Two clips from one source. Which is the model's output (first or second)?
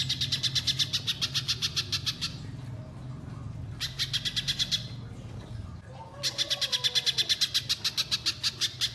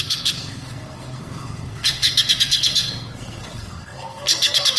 second